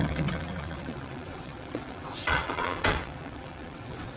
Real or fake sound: fake